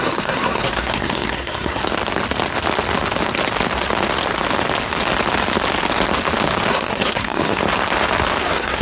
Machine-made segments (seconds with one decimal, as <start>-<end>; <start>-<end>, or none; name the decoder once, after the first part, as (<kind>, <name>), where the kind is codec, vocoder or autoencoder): 0.0-1.8 (codec, SNAC); 6.7-7.6; 8.4-8.8